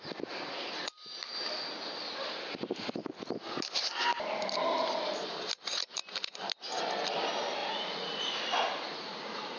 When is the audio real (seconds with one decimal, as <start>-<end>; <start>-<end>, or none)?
0.0-7.6